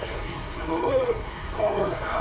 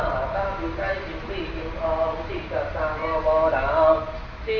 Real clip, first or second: second